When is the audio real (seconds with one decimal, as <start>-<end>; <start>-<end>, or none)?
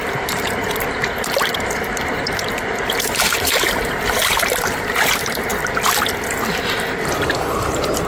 5.5-7.3